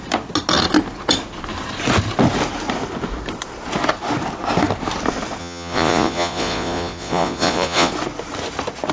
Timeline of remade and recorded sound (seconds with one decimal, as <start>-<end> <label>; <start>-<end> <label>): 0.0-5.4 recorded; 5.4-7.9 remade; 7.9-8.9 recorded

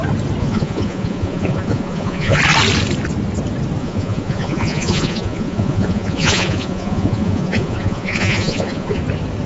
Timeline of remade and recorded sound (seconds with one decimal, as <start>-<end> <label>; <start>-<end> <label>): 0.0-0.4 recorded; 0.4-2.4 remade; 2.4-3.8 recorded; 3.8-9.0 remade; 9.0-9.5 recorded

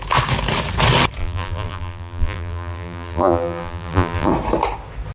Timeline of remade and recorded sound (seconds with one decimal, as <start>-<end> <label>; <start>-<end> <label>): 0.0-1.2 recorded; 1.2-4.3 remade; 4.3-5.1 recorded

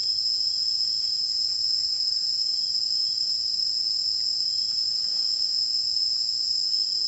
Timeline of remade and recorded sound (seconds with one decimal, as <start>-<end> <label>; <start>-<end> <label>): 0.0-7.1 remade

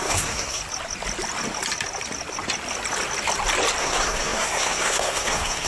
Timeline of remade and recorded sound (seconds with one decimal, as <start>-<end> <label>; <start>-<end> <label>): 0.0-0.6 remade; 0.6-3.8 recorded; 3.8-5.7 remade

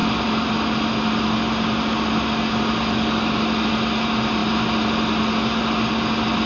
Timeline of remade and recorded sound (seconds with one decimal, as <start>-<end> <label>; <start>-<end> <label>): 0.0-6.5 recorded

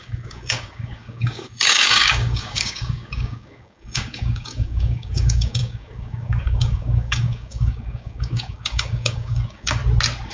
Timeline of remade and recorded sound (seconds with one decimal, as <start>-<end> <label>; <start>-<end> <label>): 0.0-9.8 remade; 9.8-10.3 recorded

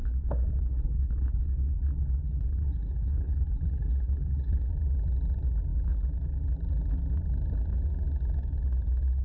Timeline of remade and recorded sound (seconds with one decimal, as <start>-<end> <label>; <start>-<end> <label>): 0.0-4.7 remade; 4.7-9.2 recorded